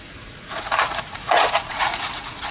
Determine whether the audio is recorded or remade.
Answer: remade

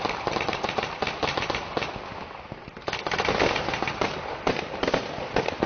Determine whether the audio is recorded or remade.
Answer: recorded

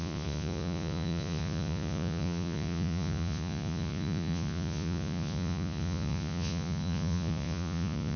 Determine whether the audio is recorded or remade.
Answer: remade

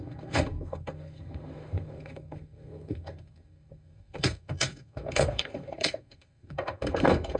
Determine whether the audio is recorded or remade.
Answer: remade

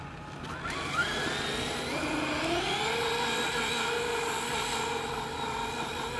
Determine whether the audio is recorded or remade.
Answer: recorded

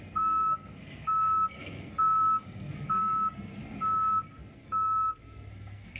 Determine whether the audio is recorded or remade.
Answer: remade